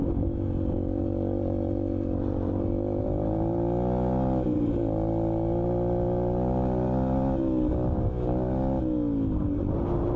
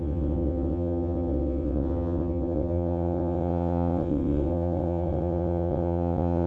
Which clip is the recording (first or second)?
first